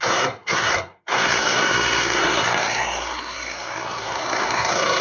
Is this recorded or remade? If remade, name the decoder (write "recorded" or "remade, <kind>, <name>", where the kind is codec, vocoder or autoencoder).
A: remade, codec, SNAC